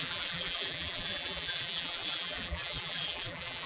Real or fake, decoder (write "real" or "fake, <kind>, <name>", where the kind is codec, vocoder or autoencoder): fake, vocoder, BigVGAN v2